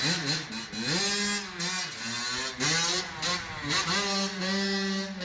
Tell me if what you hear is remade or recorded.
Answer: recorded